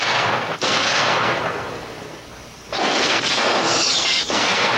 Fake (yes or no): yes